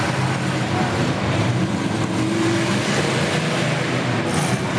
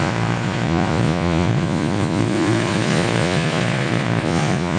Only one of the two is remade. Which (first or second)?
second